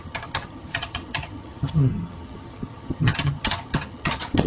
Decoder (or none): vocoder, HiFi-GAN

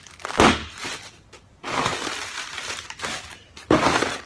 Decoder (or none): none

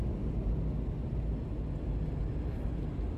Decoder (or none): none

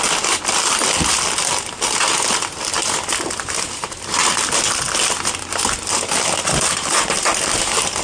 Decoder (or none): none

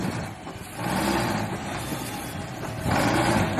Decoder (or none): none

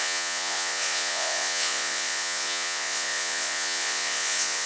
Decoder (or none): vocoder, Vocos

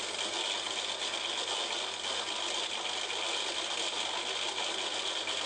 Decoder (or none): none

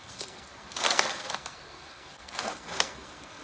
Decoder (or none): codec, SNAC